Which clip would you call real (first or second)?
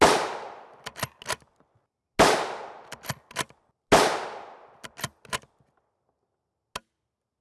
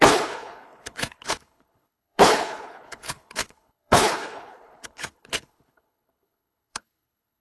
first